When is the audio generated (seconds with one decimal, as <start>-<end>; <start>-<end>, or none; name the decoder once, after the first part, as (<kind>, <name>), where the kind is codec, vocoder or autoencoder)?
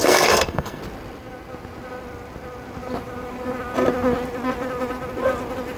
0.0-0.8 (codec, SNAC)